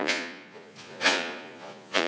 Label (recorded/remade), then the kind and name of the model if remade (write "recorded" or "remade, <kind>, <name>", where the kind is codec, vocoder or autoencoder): remade, vocoder, Vocos